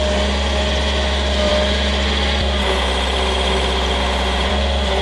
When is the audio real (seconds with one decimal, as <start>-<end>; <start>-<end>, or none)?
0.0-5.0